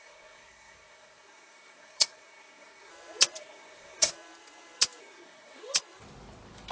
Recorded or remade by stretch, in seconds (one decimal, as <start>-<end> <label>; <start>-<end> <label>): 0.0-2.9 remade; 2.9-3.4 recorded; 3.4-4.1 remade; 4.1-5.0 recorded; 5.0-5.6 remade; 5.6-6.7 recorded